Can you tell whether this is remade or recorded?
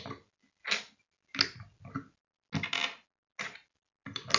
recorded